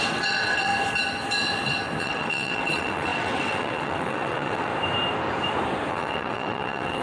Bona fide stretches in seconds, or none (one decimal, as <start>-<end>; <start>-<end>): 0.7-2.0; 4.7-5.9